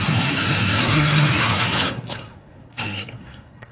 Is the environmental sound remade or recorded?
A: remade